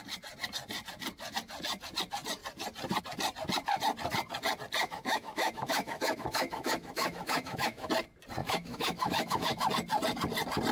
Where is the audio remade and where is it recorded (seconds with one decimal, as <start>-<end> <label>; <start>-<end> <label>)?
0.0-4.8 recorded; 4.8-7.9 remade; 7.9-8.4 recorded; 8.4-9.7 remade; 9.7-10.7 recorded